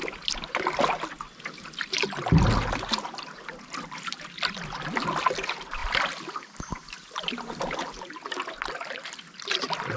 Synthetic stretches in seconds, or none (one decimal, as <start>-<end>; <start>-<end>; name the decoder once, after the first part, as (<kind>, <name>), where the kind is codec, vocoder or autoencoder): none